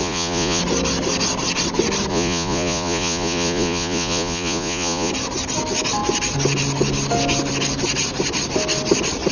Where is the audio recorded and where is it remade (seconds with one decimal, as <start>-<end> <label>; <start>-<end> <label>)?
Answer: 0.0-0.6 remade; 0.6-2.1 recorded; 2.1-5.1 remade; 5.1-9.3 recorded